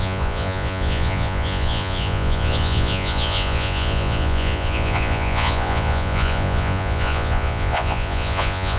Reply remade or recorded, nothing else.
remade